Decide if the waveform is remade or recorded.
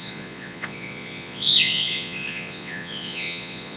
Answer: remade